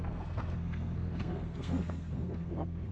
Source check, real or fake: fake